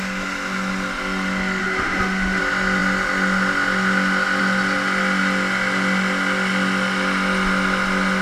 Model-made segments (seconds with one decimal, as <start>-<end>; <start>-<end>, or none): 1.6-2.4